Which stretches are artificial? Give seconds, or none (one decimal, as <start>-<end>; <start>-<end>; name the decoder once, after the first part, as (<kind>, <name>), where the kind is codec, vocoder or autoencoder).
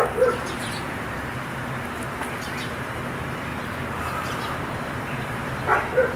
3.5-5.5 (vocoder, BigVGAN v2)